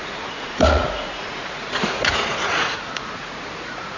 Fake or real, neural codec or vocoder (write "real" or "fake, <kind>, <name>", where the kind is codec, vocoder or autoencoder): fake, vocoder, Vocos